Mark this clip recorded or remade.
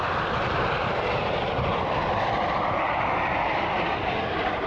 recorded